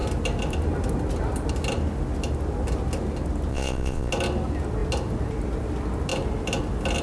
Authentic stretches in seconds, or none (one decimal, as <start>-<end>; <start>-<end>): 0.0-3.5; 4.1-7.0